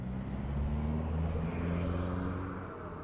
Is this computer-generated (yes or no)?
no